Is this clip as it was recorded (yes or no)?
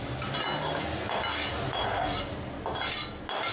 yes